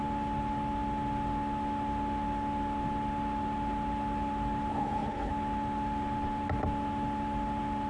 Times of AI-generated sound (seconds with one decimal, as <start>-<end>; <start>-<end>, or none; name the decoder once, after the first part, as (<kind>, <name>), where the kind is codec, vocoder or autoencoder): 4.7-5.3 (codec, HILCodec)